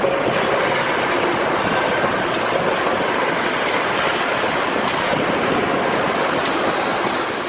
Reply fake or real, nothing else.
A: real